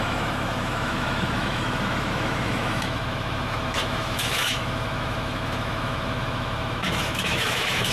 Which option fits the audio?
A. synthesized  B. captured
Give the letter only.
A